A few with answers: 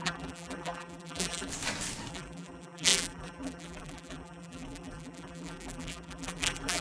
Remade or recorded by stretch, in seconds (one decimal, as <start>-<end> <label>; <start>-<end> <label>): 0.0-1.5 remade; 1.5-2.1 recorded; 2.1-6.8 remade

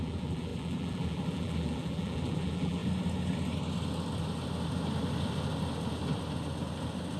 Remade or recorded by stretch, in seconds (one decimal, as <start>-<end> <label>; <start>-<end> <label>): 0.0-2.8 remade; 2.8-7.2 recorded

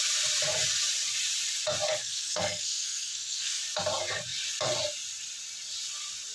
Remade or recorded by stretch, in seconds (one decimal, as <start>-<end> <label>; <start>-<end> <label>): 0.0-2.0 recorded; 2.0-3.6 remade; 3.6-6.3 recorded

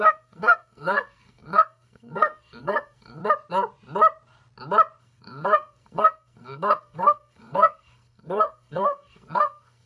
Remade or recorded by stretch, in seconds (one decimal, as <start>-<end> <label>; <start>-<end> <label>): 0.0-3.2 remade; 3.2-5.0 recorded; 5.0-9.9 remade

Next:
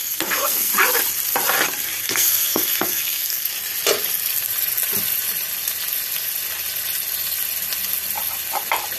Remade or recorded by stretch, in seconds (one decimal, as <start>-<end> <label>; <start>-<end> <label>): 0.0-0.7 remade; 0.7-2.0 recorded; 2.0-3.5 remade; 3.5-9.0 recorded

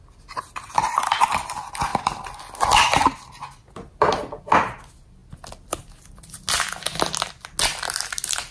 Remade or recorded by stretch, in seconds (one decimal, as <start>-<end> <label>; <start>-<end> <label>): 0.0-8.5 recorded

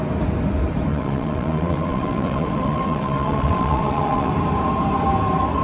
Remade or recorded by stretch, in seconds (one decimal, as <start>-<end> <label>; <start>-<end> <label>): 0.0-0.9 recorded; 0.9-4.3 remade; 4.3-5.6 recorded